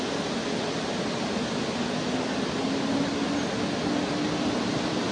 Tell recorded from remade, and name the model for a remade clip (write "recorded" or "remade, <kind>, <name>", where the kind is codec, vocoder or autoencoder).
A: recorded